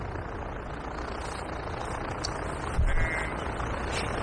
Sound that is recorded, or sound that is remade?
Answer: recorded